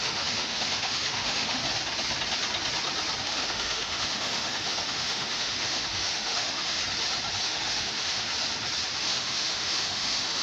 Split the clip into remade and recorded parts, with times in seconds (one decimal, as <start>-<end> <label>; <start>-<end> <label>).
0.0-1.6 remade; 1.6-3.2 recorded; 3.2-6.8 remade; 6.8-7.4 recorded; 7.4-8.3 remade; 8.3-9.0 recorded; 9.0-10.4 remade